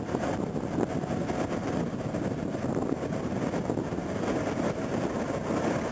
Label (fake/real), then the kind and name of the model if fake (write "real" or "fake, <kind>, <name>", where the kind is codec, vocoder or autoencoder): real